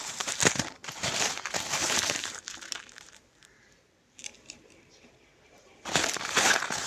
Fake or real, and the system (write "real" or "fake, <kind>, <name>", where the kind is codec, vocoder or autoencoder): fake, vocoder, BigVGAN v2